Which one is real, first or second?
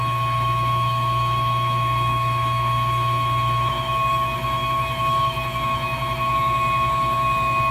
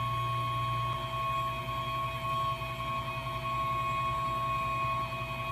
second